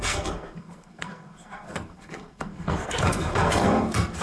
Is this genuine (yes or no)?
no